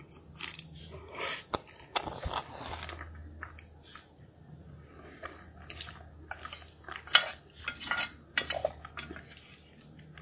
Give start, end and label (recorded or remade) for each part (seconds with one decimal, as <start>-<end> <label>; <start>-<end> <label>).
0.0-10.2 recorded